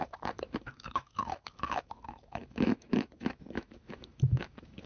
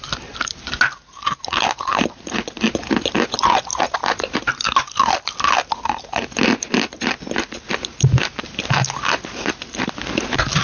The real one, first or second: second